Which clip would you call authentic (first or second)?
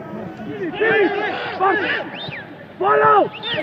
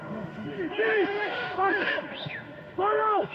first